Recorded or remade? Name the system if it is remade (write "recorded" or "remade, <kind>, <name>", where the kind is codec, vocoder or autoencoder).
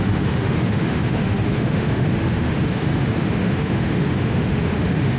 remade, autoencoder, DAC-VAE